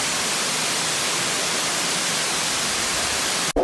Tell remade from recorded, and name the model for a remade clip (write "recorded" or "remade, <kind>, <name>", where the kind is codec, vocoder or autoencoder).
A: recorded